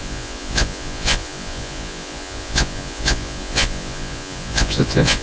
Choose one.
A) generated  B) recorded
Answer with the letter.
A